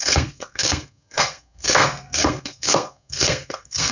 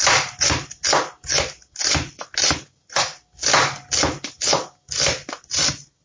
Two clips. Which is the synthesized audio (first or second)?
first